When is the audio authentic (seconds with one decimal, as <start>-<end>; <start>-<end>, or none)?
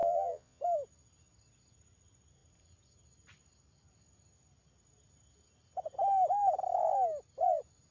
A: 0.6-7.9